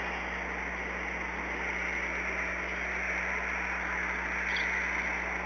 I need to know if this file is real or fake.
real